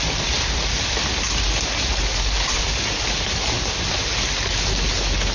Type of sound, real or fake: real